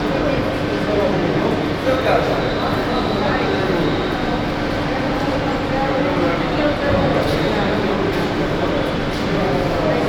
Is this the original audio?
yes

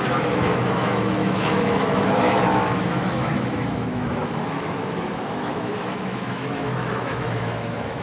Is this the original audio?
no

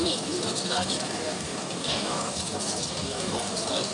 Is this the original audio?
no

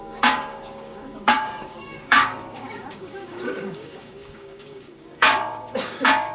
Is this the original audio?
no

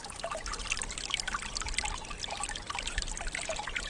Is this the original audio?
yes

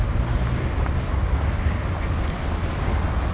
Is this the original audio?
yes